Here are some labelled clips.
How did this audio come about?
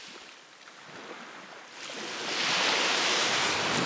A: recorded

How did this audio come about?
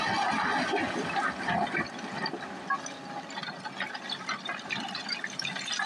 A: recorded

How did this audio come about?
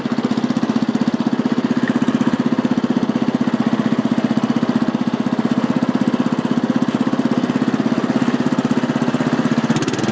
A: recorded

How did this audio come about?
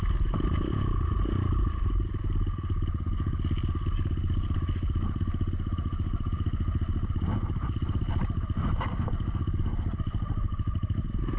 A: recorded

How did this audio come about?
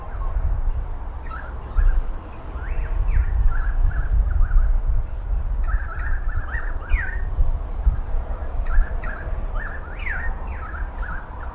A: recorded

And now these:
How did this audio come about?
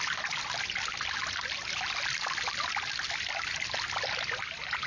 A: recorded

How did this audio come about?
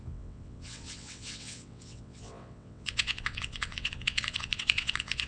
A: remade